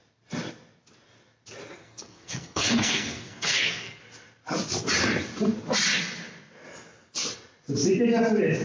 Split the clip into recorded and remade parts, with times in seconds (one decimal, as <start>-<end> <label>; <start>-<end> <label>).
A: 0.0-1.8 recorded; 1.8-4.0 remade; 4.0-8.6 recorded

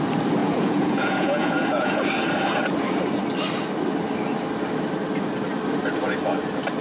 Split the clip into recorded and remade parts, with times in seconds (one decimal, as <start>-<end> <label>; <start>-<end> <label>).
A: 0.0-0.4 recorded; 0.4-2.0 remade; 2.0-6.8 recorded

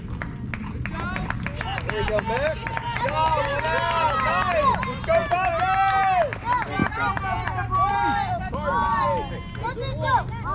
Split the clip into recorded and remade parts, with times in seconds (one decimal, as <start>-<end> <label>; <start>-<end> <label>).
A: 0.0-10.5 recorded

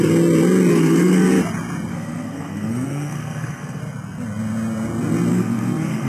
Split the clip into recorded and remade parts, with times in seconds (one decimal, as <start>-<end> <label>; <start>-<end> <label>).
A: 0.0-0.7 recorded; 0.7-1.4 remade; 1.4-1.9 recorded; 1.9-3.8 remade; 3.8-5.3 recorded; 5.3-6.1 remade

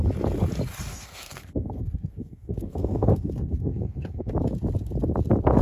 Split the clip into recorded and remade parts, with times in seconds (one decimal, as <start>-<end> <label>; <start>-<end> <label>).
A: 0.0-0.9 recorded; 0.9-4.3 remade; 4.3-5.6 recorded